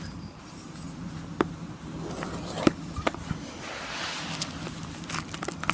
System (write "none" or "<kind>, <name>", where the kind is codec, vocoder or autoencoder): none